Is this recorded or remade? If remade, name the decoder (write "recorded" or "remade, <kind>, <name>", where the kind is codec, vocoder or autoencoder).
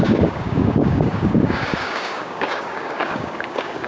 remade, codec, DAC